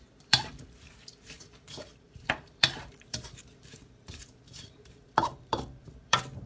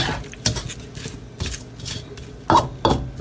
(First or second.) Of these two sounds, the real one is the second